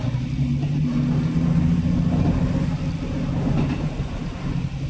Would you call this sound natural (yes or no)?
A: yes